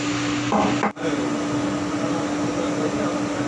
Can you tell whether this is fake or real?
real